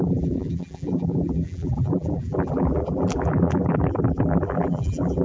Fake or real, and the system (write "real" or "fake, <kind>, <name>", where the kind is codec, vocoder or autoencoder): fake, vocoder, BigVGAN v2